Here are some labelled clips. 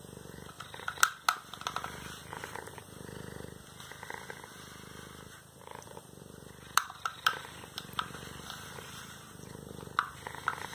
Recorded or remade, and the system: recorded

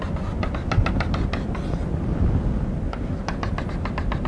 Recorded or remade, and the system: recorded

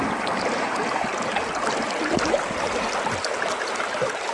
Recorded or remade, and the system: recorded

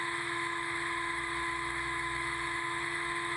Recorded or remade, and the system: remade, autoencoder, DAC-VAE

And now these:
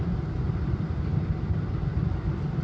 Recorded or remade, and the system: recorded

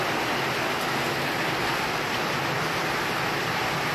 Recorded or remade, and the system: recorded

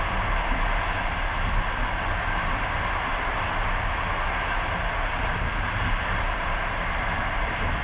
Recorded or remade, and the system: recorded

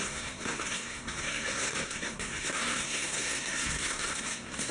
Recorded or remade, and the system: remade, codec, SNAC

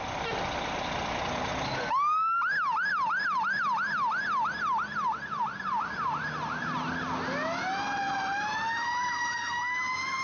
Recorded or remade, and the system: recorded